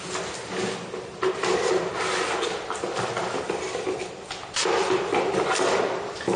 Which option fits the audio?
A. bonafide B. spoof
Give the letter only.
A